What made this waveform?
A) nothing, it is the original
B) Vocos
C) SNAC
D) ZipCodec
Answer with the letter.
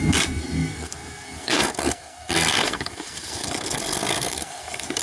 C